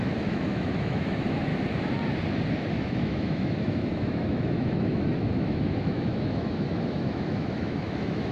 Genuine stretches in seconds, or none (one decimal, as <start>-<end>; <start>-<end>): 1.5-2.5